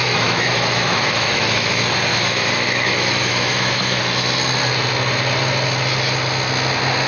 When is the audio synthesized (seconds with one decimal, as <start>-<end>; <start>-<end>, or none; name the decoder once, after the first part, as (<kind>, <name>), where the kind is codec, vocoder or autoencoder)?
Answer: 0.0-1.7 (autoencoder, DAC-VAE); 2.1-4.0